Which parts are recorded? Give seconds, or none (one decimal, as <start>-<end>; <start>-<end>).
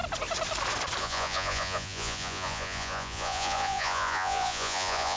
0.0-1.0